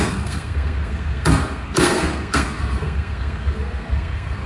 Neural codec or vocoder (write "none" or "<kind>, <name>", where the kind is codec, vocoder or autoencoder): codec, SNAC